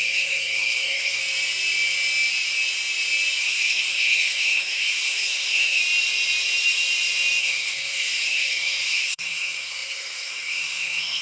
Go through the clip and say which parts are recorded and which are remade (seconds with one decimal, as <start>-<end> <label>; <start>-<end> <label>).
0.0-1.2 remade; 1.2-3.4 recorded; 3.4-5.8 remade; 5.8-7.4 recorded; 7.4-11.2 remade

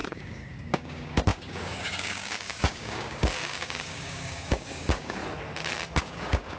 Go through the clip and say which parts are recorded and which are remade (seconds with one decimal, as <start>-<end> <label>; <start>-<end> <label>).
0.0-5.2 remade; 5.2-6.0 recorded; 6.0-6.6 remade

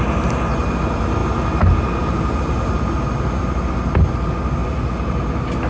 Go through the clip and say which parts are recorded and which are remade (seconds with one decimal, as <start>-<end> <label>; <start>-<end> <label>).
0.0-5.7 recorded